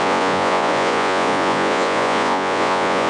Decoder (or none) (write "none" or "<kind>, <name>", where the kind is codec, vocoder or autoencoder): vocoder, Vocos